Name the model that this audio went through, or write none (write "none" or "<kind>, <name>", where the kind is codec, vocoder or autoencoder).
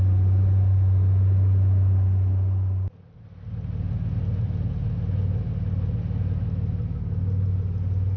none